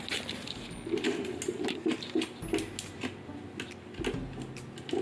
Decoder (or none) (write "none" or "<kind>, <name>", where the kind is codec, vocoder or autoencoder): none